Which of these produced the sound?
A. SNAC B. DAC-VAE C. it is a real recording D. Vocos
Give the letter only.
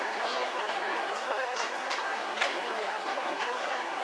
A